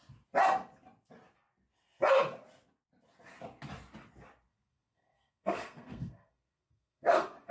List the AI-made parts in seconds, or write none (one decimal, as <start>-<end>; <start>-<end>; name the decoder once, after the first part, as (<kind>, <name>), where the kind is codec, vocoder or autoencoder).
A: 4.5-7.5 (codec, SNAC)